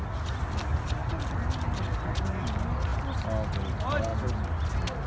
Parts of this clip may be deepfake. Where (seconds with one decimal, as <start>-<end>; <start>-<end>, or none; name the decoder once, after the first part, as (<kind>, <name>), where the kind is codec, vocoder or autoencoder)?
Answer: none